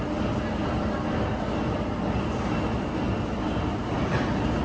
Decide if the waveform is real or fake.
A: real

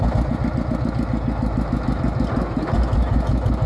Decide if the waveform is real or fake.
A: real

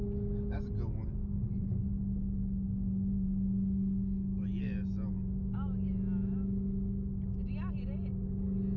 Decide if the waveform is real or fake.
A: real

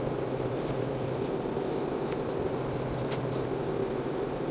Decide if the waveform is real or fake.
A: real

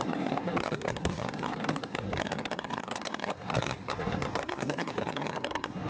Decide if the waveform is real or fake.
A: fake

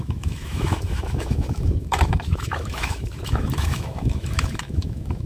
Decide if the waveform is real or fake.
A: fake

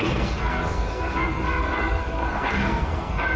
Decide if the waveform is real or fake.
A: fake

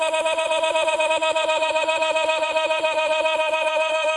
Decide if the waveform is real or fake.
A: fake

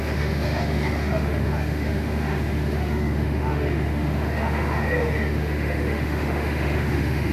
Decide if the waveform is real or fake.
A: fake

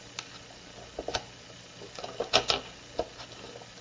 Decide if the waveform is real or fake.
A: real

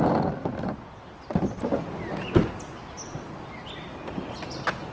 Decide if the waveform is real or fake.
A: real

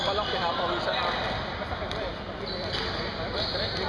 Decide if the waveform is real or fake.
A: real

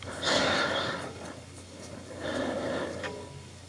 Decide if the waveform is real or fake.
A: fake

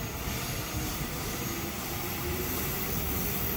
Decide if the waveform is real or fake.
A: fake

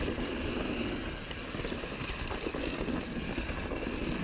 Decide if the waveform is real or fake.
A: real